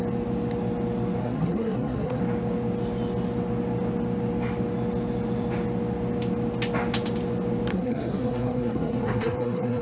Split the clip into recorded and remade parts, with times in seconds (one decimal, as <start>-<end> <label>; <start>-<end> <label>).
0.0-1.2 recorded; 1.2-2.2 remade; 2.2-7.7 recorded; 7.7-9.8 remade